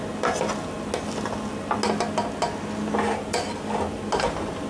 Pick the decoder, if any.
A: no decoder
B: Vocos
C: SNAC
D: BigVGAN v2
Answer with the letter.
A